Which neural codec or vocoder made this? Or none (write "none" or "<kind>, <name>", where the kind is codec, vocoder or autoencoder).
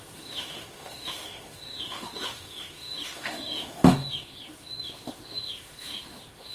autoencoder, DAC-VAE